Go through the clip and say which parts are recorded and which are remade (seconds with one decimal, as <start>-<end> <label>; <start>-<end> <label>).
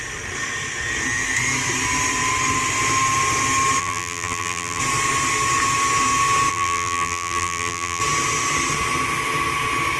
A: 0.0-3.8 recorded; 3.8-4.8 remade; 4.8-6.5 recorded; 6.5-8.0 remade; 8.0-10.0 recorded